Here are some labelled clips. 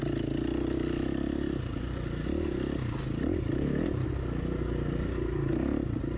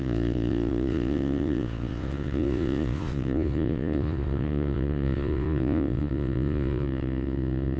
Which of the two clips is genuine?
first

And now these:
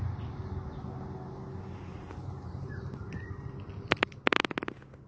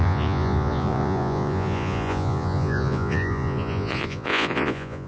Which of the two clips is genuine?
first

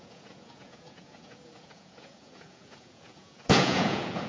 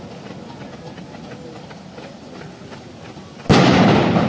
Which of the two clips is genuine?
second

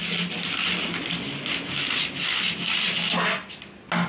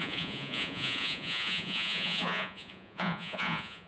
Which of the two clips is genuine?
first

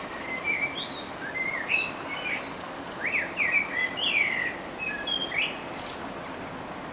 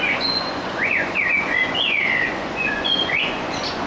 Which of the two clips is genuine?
first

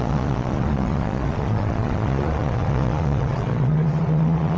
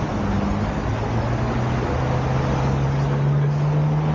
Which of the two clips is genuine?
second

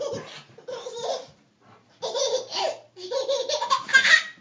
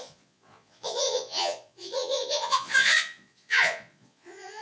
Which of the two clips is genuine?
first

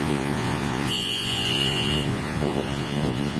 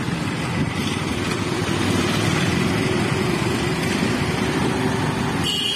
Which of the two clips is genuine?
second